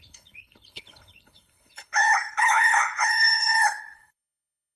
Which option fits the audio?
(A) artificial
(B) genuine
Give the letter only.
A